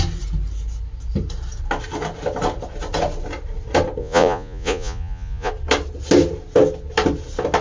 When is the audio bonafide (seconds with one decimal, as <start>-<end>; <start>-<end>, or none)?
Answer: 0.0-4.0; 5.5-7.6